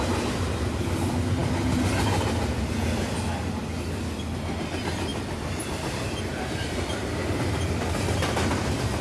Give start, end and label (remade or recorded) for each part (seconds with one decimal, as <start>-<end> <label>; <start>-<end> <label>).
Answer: 0.0-9.0 recorded